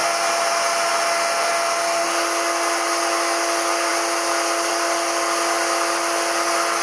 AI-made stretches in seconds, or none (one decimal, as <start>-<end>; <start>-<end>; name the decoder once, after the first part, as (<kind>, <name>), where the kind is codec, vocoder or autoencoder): none